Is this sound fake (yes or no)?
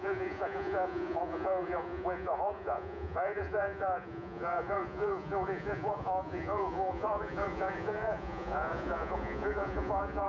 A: yes